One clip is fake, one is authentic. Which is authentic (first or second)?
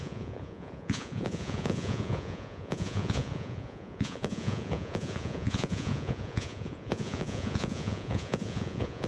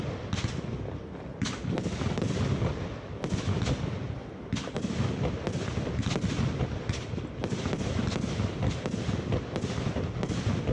second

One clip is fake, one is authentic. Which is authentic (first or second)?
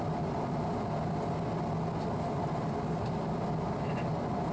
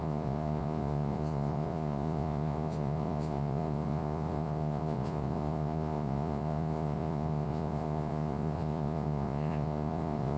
first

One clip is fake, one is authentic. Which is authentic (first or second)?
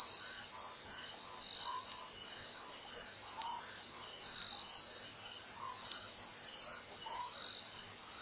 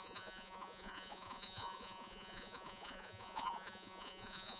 first